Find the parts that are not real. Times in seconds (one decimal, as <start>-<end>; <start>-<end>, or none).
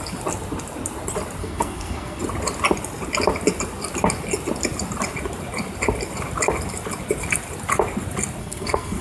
1.4-2.2; 8.4-9.0